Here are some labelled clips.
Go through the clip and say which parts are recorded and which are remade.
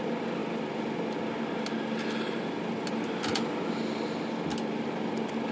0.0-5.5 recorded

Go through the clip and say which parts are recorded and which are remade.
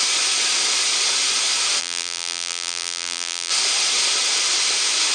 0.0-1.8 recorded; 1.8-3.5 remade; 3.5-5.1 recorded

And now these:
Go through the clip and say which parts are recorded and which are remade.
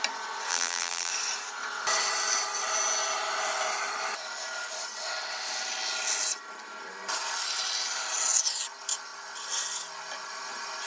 0.0-0.5 recorded; 0.5-1.1 remade; 1.1-10.9 recorded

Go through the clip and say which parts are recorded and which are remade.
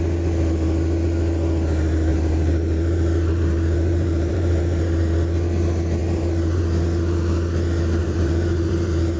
0.0-2.1 recorded; 2.1-5.0 remade; 5.0-6.0 recorded; 6.0-6.6 remade; 6.6-8.0 recorded; 8.0-9.2 remade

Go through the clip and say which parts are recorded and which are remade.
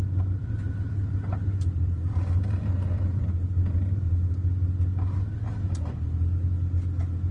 0.0-0.4 recorded; 0.4-4.3 remade; 4.3-7.3 recorded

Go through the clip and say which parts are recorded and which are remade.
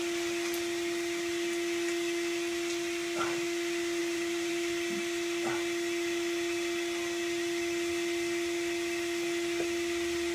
0.0-4.0 recorded; 4.0-4.5 remade; 4.5-10.3 recorded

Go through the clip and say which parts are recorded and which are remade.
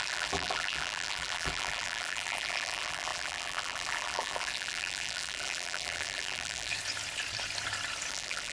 0.0-6.7 remade; 6.7-8.1 recorded; 8.1-8.5 remade